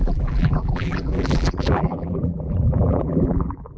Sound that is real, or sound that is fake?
fake